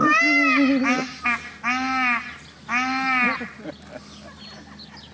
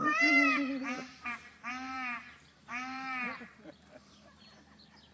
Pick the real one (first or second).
first